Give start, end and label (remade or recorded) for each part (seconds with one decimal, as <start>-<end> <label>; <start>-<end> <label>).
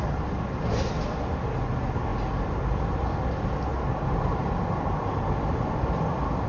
0.0-6.5 recorded